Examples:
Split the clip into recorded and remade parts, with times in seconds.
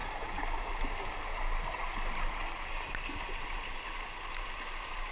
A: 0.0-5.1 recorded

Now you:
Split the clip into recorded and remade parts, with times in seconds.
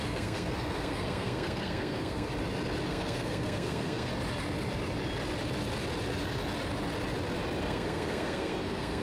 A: 0.0-2.3 remade; 2.3-2.9 recorded; 2.9-4.1 remade; 4.1-7.6 recorded; 7.6-9.0 remade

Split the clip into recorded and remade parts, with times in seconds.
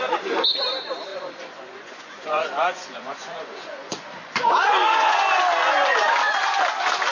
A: 0.0-1.1 recorded; 1.1-5.4 remade; 5.4-7.1 recorded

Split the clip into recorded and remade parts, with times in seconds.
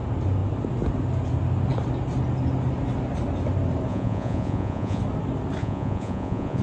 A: 0.0-3.9 recorded; 3.9-5.0 remade; 5.0-5.6 recorded; 5.6-6.6 remade